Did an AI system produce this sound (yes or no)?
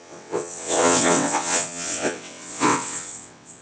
yes